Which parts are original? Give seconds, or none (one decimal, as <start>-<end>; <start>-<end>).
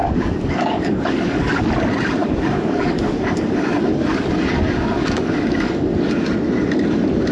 1.7-2.2; 5.9-7.3